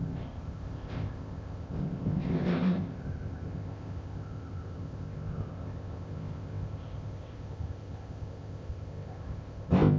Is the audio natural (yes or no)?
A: no